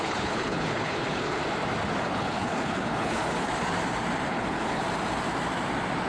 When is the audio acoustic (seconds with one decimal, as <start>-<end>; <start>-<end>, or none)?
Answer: 1.4-2.0; 3.5-4.3; 4.8-6.1